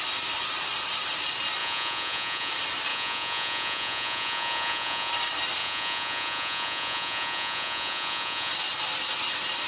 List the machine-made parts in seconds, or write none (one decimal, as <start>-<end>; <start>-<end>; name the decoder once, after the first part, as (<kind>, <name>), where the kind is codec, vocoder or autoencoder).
1.6-2.5 (vocoder, Vocos); 2.9-5.1; 5.6-8.5